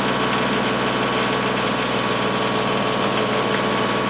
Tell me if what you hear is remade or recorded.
recorded